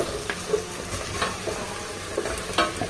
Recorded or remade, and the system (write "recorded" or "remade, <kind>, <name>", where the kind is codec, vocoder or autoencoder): recorded